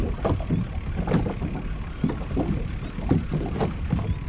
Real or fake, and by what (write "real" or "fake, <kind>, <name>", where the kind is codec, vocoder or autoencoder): real